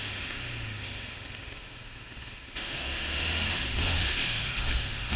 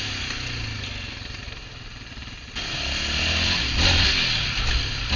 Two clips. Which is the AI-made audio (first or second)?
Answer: first